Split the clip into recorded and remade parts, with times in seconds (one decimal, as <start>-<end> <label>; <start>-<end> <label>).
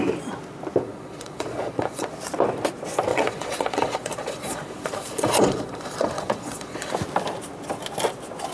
0.0-0.8 recorded; 0.8-2.1 remade; 2.1-3.1 recorded; 3.1-6.9 remade; 6.9-8.5 recorded